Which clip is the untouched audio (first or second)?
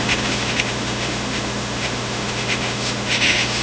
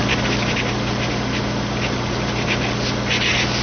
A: second